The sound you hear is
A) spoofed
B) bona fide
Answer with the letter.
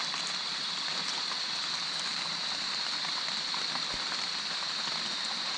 A